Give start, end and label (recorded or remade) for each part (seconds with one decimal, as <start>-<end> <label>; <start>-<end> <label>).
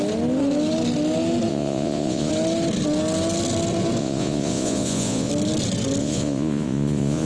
0.0-1.5 recorded; 1.5-2.3 remade; 2.3-4.0 recorded; 4.0-5.3 remade; 5.3-6.0 recorded; 6.0-7.3 remade